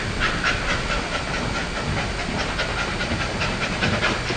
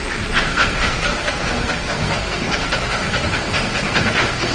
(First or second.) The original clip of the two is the first